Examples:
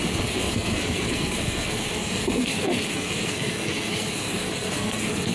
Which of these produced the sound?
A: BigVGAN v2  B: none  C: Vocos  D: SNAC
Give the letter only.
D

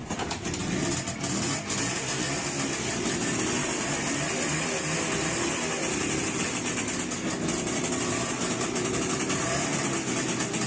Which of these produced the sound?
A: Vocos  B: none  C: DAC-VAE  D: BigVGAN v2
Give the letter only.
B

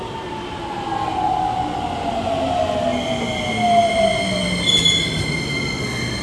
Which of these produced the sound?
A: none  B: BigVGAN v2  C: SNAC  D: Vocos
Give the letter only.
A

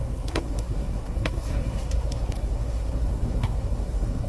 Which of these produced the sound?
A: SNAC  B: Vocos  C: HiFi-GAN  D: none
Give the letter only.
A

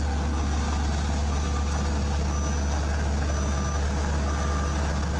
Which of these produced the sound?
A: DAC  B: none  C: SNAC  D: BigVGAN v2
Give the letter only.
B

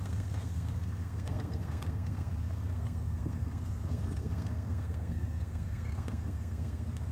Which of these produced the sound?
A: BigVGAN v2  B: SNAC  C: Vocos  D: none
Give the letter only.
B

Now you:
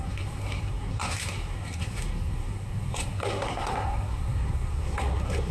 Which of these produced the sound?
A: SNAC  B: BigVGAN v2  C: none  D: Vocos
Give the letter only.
A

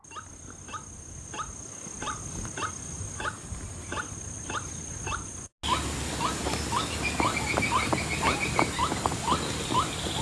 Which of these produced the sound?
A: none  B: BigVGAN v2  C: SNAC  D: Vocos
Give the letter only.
A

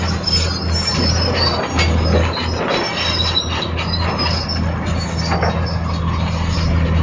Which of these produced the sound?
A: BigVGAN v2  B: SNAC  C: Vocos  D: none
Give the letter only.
D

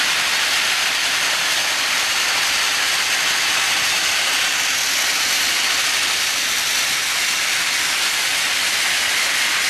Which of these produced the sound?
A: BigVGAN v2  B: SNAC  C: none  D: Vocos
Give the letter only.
C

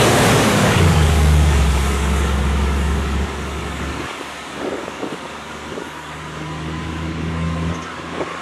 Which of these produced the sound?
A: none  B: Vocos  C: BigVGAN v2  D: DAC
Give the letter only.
D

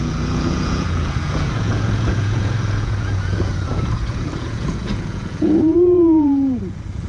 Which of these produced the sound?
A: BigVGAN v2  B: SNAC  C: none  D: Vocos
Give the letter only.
D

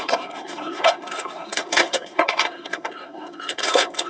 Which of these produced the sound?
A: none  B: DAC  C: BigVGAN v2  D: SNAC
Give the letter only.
D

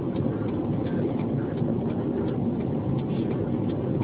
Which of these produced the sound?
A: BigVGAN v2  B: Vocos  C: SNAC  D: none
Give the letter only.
D